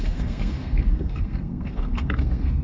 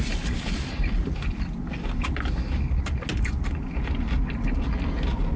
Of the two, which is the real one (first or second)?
second